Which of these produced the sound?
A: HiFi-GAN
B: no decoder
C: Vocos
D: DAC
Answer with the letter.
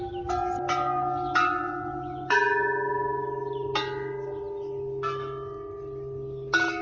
B